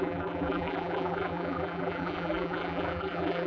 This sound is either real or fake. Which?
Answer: fake